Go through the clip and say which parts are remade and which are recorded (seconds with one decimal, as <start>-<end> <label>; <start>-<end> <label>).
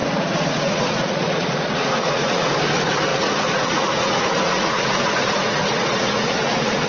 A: 0.0-2.5 remade; 2.5-3.1 recorded; 3.1-6.9 remade